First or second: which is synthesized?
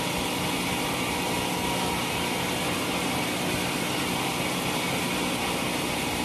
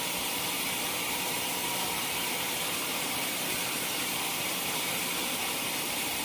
second